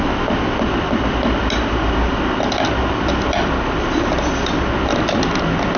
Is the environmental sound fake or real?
real